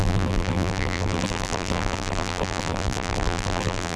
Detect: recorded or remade remade